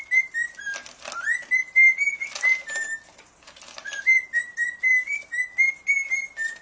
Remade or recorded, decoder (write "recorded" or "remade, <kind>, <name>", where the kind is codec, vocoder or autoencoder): recorded